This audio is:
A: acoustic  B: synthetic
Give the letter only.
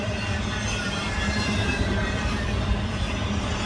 B